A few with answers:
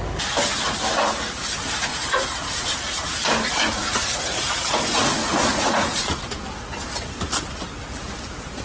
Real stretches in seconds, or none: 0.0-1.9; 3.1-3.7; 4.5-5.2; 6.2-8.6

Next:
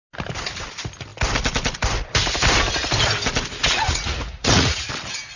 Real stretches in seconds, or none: 0.0-3.5; 4.9-5.4

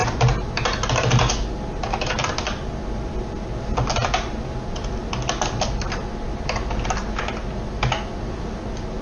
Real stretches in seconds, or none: 0.0-9.0